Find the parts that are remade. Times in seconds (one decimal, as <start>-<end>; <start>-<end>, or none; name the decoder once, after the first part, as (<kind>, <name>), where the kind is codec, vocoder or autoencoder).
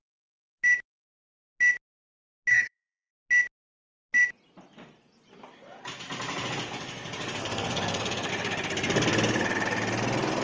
2.5-3.1 (codec, SNAC); 7.4-8.3